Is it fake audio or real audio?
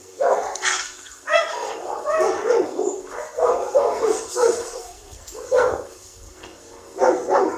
fake